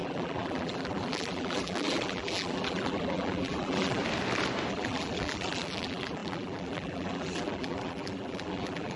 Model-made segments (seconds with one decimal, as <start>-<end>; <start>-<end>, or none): 0.0-4.0; 4.7-9.0